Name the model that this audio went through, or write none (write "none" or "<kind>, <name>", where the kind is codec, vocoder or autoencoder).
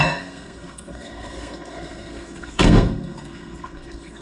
codec, SNAC